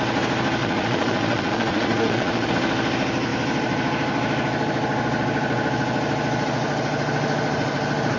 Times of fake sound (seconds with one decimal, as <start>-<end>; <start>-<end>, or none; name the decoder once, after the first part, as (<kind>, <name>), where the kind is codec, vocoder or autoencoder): 0.6-2.5 (vocoder, Vocos)